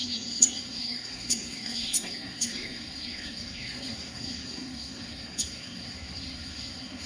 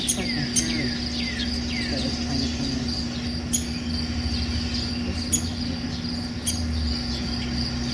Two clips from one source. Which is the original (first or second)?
second